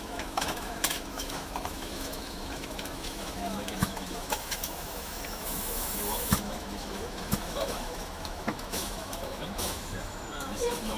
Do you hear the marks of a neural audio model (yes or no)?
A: yes